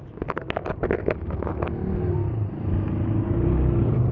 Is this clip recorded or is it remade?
recorded